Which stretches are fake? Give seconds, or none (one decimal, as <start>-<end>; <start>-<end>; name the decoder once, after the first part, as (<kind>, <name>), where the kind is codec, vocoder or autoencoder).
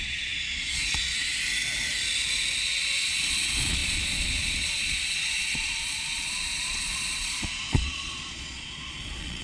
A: 0.0-1.4 (vocoder, Vocos); 2.6-9.4